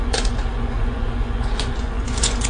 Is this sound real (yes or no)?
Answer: no